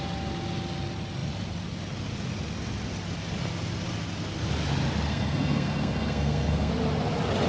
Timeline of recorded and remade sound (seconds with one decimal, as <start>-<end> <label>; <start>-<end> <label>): 0.0-5.1 recorded; 5.1-6.7 remade; 6.7-7.5 recorded